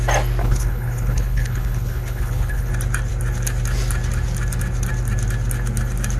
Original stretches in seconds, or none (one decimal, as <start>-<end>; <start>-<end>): 0.0-0.4; 2.7-6.2